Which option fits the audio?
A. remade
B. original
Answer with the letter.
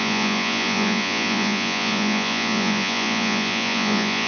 A